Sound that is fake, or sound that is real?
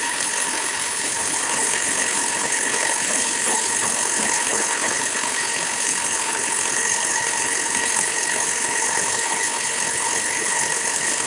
fake